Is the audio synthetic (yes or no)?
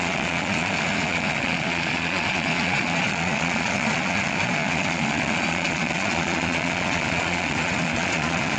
yes